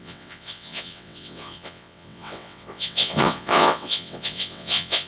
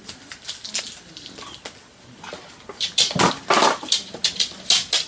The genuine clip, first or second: second